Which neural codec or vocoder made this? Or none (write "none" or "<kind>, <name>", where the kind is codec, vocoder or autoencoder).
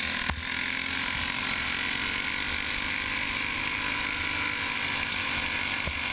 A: none